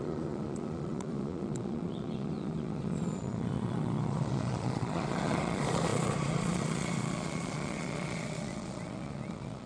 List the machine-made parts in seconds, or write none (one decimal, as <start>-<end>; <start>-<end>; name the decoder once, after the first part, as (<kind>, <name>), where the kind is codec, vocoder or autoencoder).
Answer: 0.0-9.7 (vocoder, Vocos)